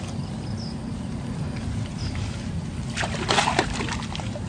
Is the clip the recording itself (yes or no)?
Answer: yes